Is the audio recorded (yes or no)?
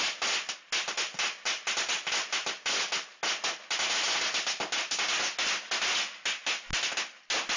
yes